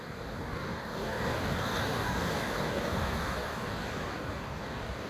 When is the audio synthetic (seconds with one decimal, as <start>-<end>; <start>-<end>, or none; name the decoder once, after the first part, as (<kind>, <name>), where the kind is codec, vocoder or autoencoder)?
0.0-5.1 (codec, DAC)